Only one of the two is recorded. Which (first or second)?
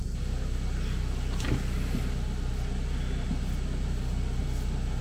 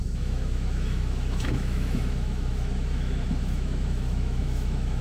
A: first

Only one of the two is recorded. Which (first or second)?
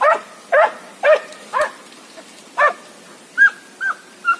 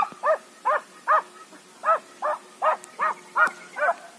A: second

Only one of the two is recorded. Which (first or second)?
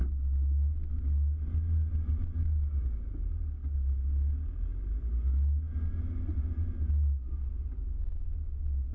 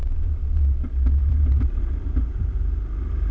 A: first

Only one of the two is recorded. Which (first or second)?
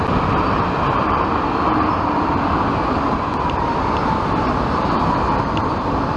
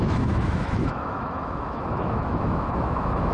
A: first